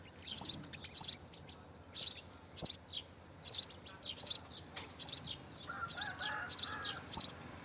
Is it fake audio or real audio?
real